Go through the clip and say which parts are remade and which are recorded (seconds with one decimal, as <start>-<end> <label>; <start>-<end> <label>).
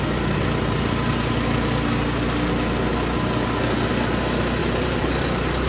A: 0.0-4.6 recorded; 4.6-5.7 remade